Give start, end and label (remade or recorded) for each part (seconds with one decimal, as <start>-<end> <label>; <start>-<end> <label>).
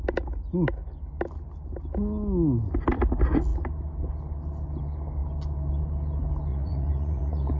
0.0-6.5 recorded; 6.5-7.6 remade